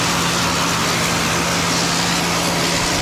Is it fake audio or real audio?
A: real